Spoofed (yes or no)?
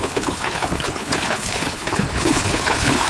yes